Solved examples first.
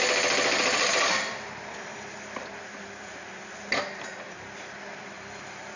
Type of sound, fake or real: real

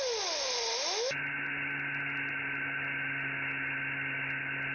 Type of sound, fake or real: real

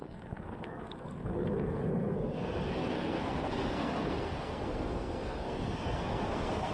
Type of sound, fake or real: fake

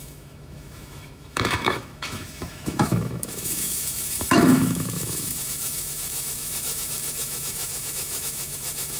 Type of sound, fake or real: fake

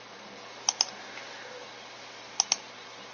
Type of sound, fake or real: real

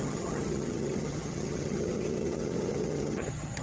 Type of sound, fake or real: fake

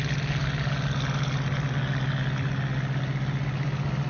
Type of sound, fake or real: real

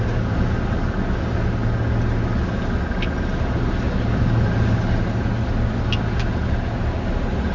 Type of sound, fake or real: real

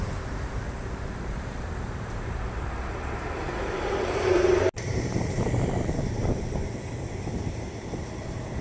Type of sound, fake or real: fake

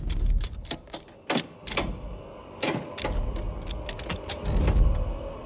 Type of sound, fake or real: real